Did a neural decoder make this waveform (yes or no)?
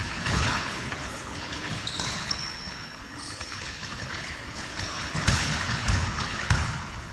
yes